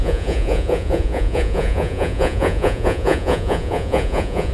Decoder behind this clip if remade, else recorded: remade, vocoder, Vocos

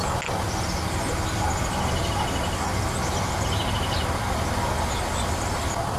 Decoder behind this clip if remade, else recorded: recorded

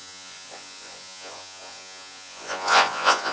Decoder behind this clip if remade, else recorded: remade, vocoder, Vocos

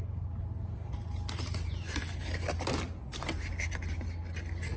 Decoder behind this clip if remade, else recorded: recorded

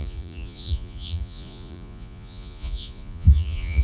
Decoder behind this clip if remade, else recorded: remade, vocoder, Vocos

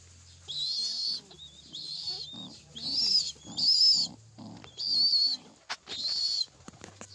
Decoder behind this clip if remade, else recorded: recorded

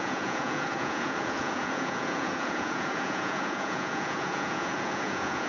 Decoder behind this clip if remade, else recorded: remade, vocoder, Vocos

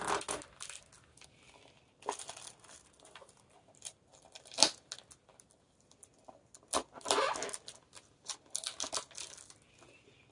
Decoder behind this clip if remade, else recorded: recorded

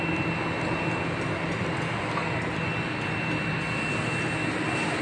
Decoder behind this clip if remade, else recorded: recorded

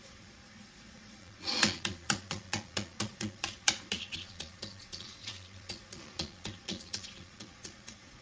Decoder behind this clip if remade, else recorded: remade, vocoder, Vocos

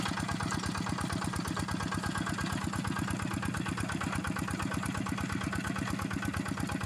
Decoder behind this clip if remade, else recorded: recorded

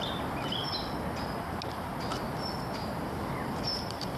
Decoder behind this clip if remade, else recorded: recorded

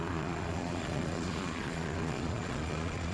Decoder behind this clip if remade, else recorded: remade, vocoder, Vocos